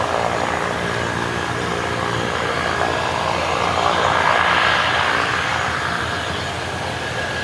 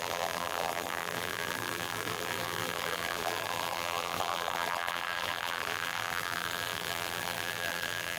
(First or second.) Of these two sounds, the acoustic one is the first